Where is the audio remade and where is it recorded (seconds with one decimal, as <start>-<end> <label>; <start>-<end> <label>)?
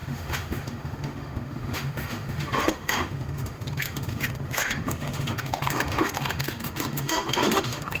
0.0-8.0 remade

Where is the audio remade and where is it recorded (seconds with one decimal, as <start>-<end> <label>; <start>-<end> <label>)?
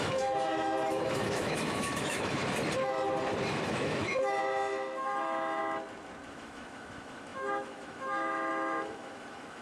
0.0-2.4 remade; 2.4-3.5 recorded; 3.5-5.6 remade; 5.6-6.3 recorded; 6.3-9.6 remade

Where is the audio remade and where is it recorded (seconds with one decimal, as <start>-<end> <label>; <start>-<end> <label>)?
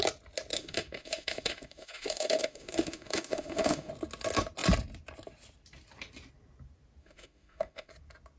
0.0-0.5 recorded; 0.5-3.9 remade; 3.9-7.0 recorded; 7.0-7.9 remade; 7.9-8.4 recorded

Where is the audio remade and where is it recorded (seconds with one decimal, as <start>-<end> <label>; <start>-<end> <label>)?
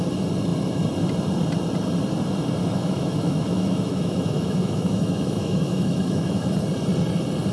0.0-2.6 recorded; 2.6-6.5 remade; 6.5-7.5 recorded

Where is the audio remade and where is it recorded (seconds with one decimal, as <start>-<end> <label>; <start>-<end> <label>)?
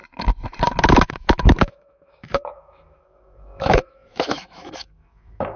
0.0-0.8 recorded; 0.8-5.6 remade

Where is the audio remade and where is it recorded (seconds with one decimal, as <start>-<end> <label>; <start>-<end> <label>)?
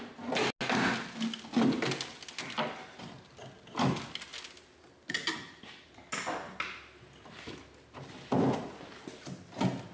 0.0-9.9 recorded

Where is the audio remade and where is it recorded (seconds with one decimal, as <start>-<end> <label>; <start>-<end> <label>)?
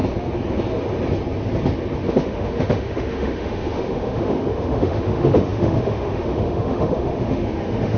0.0-2.1 recorded; 2.1-8.0 remade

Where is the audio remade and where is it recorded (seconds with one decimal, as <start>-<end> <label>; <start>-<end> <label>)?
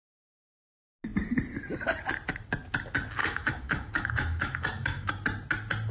0.0-3.2 recorded; 3.2-5.1 remade; 5.1-5.9 recorded